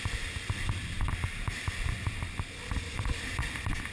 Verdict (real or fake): real